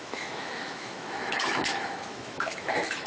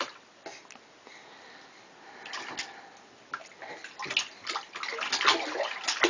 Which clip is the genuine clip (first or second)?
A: second